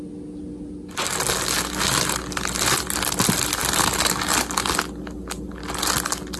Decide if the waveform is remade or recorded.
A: recorded